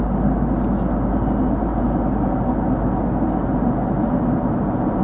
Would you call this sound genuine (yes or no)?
yes